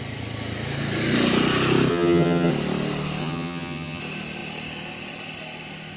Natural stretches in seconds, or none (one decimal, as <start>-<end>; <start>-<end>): 0.0-1.9; 2.5-3.2; 4.0-6.0